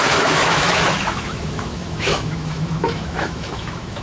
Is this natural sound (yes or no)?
no